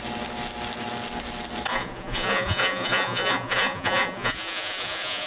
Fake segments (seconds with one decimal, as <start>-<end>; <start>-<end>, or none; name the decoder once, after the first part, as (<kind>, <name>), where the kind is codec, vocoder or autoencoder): 1.7-5.3 (vocoder, Vocos)